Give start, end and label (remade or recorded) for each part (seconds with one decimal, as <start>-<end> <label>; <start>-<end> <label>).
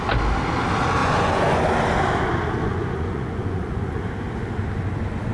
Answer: 0.0-1.0 recorded; 1.0-1.6 remade; 1.6-2.6 recorded; 2.6-4.0 remade; 4.0-5.3 recorded